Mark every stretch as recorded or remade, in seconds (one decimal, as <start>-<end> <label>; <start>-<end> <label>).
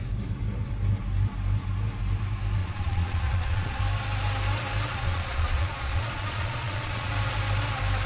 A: 0.0-2.6 recorded; 2.6-3.8 remade; 3.8-4.9 recorded; 4.9-7.1 remade; 7.1-8.1 recorded